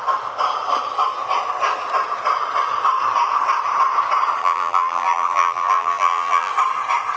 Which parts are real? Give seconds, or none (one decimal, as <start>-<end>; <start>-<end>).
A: 0.0-4.4; 6.5-7.2